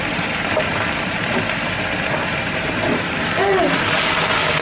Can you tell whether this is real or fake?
real